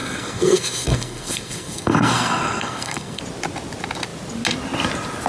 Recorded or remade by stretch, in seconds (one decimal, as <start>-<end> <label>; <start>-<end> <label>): 0.0-3.2 remade; 3.2-5.3 recorded